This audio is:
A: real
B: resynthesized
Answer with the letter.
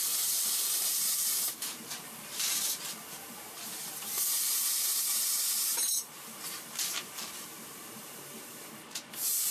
B